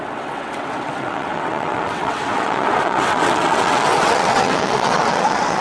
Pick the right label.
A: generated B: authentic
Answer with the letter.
A